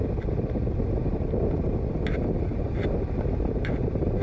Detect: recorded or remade recorded